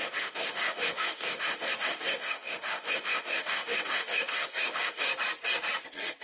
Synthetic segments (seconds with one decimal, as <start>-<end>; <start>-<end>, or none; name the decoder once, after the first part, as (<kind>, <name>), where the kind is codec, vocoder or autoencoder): 0.0-5.1 (autoencoder, DAC-VAE)